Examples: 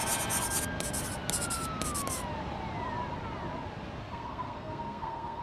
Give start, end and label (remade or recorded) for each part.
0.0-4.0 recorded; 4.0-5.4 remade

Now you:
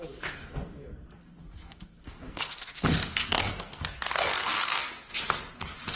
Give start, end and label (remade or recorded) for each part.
0.0-5.1 remade; 5.1-6.0 recorded

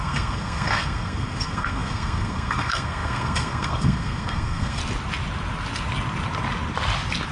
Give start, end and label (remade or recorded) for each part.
0.0-4.8 remade; 4.8-7.3 recorded

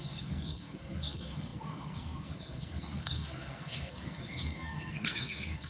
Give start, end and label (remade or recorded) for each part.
0.0-5.7 remade

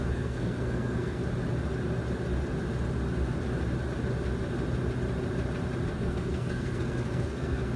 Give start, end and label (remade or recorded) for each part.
0.0-1.2 remade; 1.2-5.9 recorded; 5.9-7.8 remade

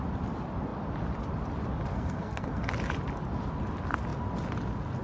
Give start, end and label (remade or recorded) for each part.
0.0-1.9 recorded; 1.9-2.7 remade; 2.7-5.0 recorded

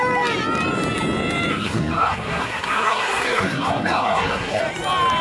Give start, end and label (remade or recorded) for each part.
0.0-1.5 recorded; 1.5-4.6 remade; 4.6-5.2 recorded